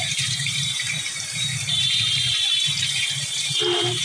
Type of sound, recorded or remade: remade